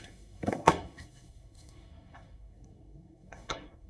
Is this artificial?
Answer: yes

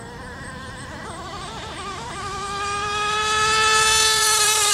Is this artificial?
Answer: yes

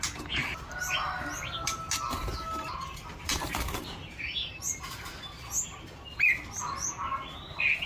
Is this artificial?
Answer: no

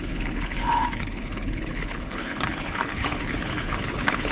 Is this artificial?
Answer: yes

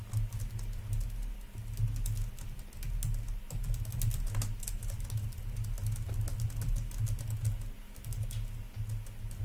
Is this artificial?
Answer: no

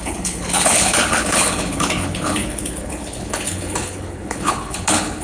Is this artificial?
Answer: yes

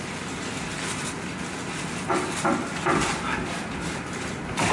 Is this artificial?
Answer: no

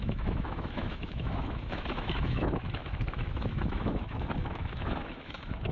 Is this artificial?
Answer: yes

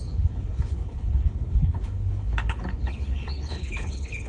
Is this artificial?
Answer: yes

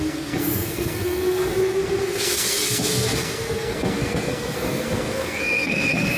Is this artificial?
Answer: yes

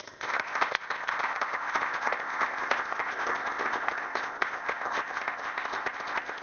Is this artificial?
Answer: yes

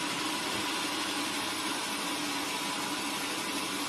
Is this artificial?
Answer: no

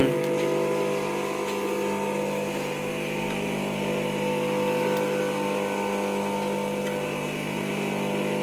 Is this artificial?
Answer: no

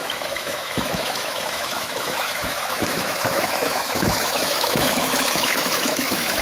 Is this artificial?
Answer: yes